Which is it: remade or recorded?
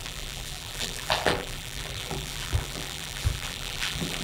remade